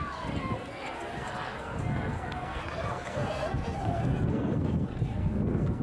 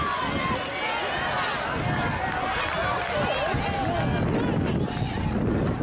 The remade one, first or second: first